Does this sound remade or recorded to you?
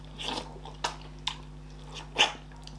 recorded